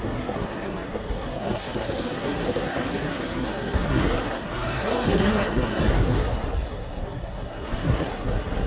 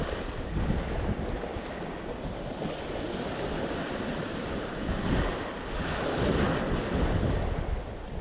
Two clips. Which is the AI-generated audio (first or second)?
first